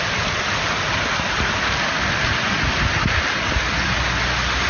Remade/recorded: recorded